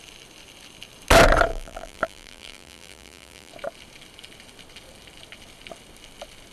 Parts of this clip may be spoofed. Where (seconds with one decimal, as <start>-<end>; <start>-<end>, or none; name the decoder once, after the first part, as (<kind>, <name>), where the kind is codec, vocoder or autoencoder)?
1.5-3.5 (vocoder, BigVGAN v2)